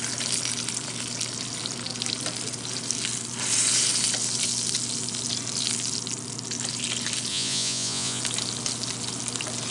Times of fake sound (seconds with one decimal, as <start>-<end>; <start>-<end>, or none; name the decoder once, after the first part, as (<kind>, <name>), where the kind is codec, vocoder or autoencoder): 7.3-8.2 (vocoder, Vocos)